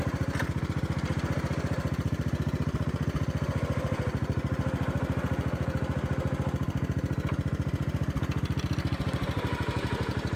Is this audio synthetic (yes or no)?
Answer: no